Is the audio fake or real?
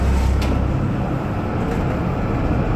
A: real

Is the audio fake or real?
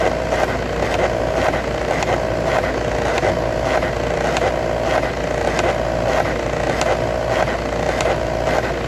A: real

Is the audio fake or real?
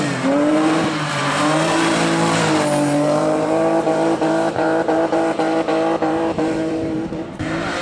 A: fake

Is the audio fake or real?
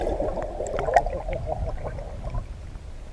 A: real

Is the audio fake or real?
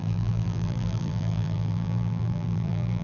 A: fake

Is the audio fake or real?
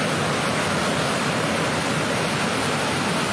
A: real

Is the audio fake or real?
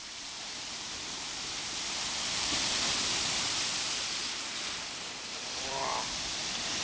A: fake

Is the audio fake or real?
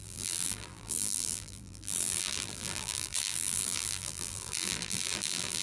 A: fake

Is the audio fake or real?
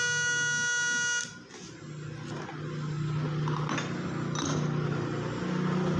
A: real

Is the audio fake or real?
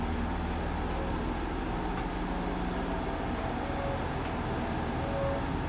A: real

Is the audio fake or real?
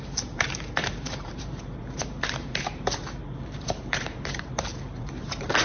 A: fake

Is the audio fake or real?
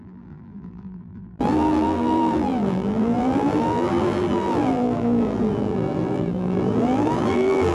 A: fake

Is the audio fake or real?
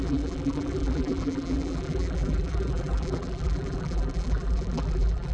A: fake